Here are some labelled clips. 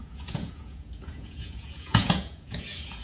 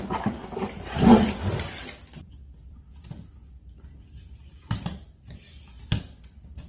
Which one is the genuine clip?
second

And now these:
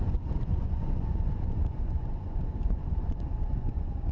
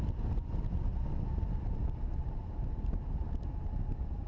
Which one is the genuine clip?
second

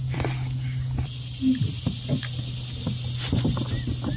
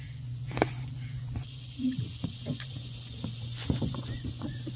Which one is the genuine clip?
first